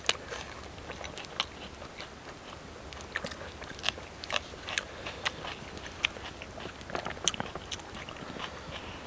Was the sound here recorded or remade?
recorded